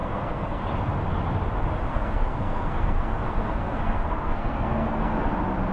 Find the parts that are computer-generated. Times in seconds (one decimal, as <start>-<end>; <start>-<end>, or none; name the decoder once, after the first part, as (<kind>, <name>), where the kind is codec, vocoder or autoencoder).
0.0-0.6 (codec, SNAC); 1.9-5.3